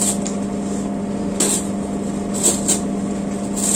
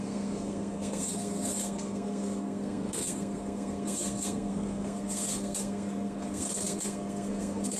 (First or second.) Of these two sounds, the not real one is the second